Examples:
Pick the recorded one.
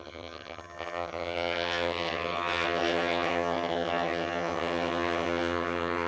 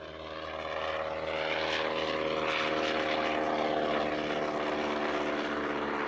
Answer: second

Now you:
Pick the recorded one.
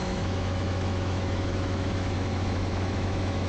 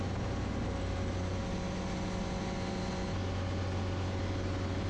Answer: second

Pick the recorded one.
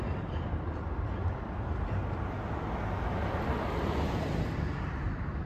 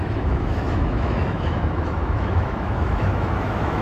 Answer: first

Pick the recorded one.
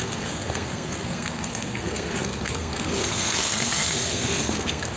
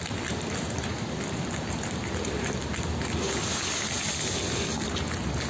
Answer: second